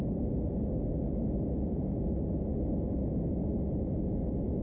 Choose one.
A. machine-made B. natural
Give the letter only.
B